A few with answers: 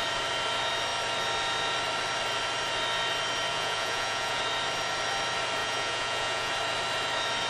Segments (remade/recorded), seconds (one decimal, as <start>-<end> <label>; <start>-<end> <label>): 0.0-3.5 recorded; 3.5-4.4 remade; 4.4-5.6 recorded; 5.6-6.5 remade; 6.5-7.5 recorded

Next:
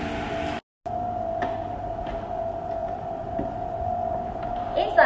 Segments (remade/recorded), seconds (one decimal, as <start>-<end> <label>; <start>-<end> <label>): 0.0-2.8 recorded; 2.8-4.4 remade; 4.4-5.1 recorded

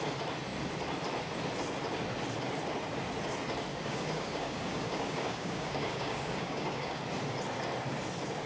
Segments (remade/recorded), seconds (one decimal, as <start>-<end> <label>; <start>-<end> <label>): 0.0-3.7 recorded; 3.7-7.0 remade; 7.0-8.5 recorded

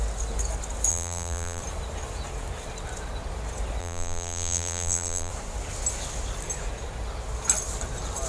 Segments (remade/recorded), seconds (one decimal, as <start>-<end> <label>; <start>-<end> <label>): 0.0-0.9 recorded; 0.9-1.6 remade; 1.6-3.8 recorded; 3.8-5.3 remade; 5.3-8.3 recorded

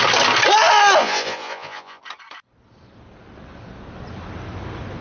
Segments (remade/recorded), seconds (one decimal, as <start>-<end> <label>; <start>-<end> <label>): 0.0-1.0 recorded; 1.0-2.0 remade; 2.0-5.0 recorded

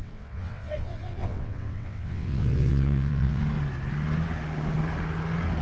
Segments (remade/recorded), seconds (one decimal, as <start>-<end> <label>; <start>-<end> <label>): 0.0-3.4 remade; 3.4-5.6 recorded

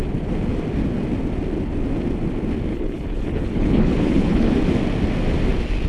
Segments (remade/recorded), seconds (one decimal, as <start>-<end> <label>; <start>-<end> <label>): 0.0-2.7 recorded; 2.7-4.6 remade; 4.6-5.9 recorded

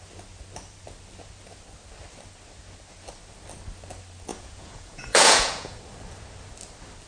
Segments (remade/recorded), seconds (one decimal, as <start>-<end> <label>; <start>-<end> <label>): 0.0-4.3 recorded; 4.3-5.8 remade; 5.8-7.1 recorded